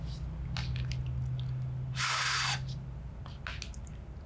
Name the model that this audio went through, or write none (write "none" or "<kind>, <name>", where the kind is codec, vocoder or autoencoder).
none